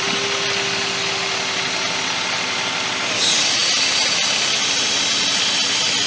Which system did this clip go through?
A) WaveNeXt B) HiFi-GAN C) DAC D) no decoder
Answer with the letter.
D